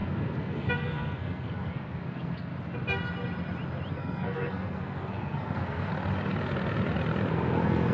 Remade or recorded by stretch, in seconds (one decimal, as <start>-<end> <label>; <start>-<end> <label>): 0.0-2.5 remade; 2.5-3.9 recorded; 3.9-5.9 remade; 5.9-7.3 recorded; 7.3-7.9 remade